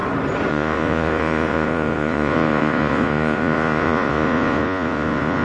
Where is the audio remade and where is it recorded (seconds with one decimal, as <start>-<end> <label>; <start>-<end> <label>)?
0.0-0.5 recorded; 0.5-5.4 remade